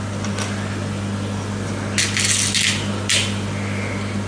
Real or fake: real